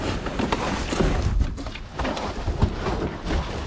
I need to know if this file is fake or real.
real